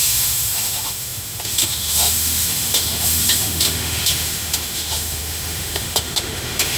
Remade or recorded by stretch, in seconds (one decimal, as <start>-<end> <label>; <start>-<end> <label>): 0.0-6.8 remade